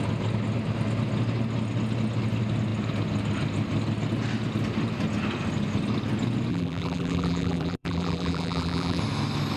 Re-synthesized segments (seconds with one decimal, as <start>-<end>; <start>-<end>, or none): 6.5-9.0